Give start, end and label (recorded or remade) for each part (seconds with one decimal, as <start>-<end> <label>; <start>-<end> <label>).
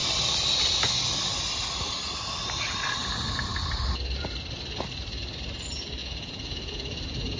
0.0-6.0 recorded; 6.0-7.4 remade